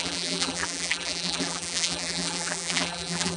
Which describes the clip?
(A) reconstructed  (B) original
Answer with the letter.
A